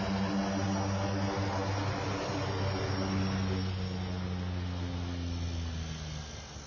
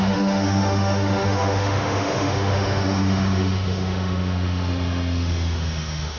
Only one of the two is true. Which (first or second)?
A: first